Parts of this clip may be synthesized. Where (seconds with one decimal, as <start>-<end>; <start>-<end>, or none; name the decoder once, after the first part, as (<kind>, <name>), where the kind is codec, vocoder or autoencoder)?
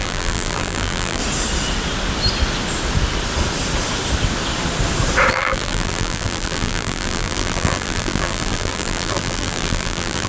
0.0-1.2 (vocoder, BigVGAN v2); 5.3-10.3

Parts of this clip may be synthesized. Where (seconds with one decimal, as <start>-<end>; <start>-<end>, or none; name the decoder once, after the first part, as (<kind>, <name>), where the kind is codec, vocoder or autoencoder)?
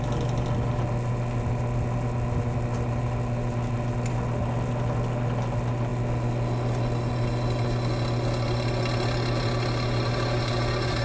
none